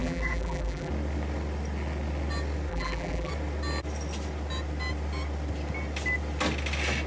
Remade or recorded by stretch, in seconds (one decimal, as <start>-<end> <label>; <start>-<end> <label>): 0.0-0.9 remade; 0.9-2.7 recorded; 2.7-3.3 remade; 3.3-7.1 recorded